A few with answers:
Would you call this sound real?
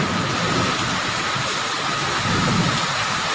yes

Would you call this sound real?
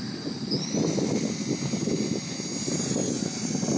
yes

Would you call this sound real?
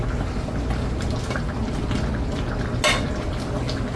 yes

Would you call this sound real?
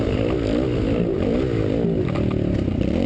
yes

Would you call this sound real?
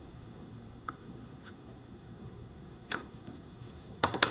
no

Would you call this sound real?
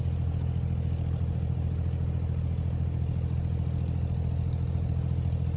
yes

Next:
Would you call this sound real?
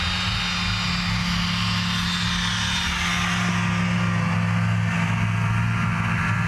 yes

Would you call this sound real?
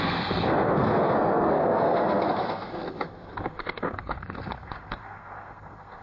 no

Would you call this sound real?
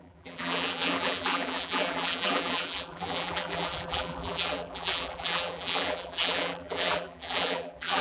no